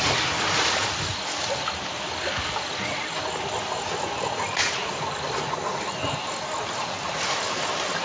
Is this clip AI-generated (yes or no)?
no